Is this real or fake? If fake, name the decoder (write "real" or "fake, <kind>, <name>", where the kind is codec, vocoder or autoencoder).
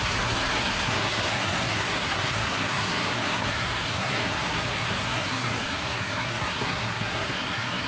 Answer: fake, codec, SNAC